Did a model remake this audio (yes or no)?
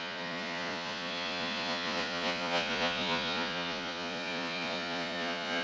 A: yes